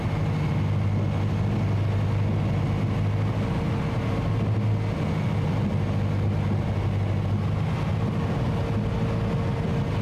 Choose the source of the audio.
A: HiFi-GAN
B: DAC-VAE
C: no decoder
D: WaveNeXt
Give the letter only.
C